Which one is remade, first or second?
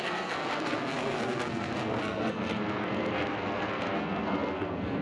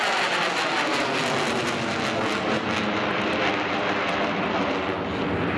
first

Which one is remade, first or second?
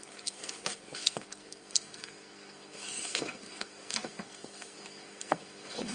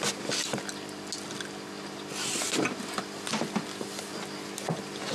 first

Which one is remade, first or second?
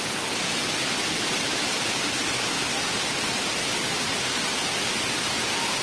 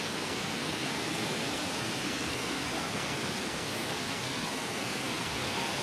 second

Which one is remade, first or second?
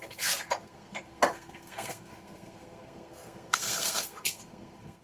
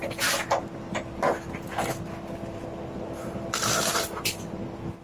first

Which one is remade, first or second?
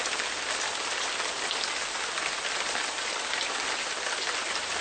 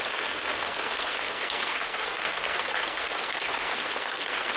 second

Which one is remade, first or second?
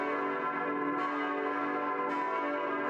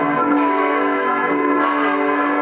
second